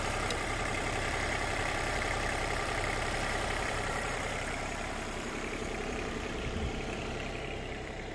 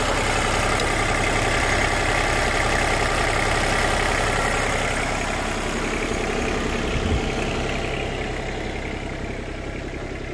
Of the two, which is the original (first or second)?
second